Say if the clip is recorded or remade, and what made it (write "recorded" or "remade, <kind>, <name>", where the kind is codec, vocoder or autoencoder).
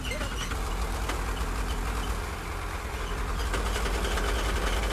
recorded